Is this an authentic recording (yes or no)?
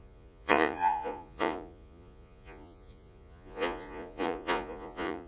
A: no